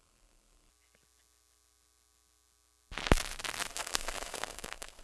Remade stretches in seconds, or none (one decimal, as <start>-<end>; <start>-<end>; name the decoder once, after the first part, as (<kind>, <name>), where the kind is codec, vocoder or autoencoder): 0.0-0.7 (codec, SNAC); 3.7-5.0